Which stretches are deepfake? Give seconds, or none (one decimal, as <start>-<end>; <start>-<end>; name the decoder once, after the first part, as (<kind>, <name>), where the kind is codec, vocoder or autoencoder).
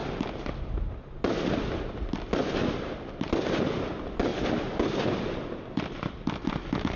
none